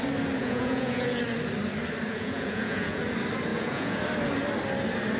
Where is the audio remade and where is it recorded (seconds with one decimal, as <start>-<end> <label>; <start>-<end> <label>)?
0.0-0.4 recorded; 0.4-1.2 remade; 1.2-2.1 recorded; 2.1-3.0 remade; 3.0-3.5 recorded; 3.5-4.0 remade; 4.0-5.2 recorded